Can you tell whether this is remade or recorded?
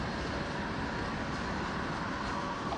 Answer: recorded